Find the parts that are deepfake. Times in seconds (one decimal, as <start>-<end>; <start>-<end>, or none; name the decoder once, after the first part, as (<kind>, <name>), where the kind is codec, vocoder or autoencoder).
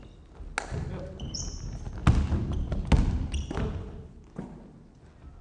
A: none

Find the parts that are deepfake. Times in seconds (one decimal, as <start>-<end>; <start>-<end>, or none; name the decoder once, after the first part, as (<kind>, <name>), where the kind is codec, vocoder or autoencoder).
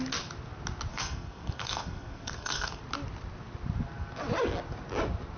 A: 0.9-2.8 (codec, SNAC)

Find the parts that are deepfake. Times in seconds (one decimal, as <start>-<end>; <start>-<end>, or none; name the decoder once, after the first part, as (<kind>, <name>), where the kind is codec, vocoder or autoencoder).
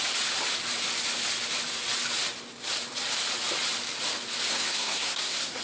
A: 4.5-5.6 (codec, SNAC)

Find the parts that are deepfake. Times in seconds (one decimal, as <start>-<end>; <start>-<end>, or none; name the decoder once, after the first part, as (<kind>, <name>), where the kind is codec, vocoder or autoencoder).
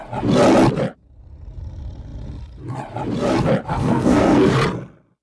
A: 3.7-4.5 (codec, SNAC)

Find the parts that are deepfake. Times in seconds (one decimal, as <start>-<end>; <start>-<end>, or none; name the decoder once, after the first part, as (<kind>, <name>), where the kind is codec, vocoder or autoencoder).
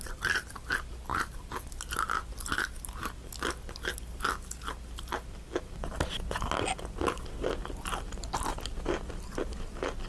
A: none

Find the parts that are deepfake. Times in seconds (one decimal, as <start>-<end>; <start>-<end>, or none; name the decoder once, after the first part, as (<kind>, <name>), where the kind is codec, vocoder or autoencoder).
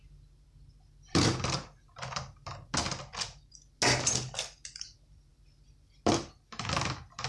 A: none